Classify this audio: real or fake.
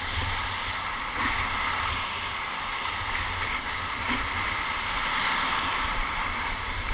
real